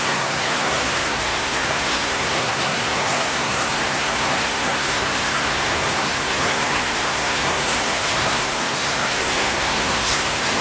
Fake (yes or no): yes